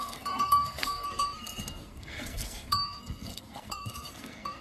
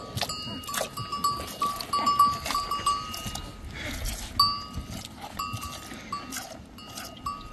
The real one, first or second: second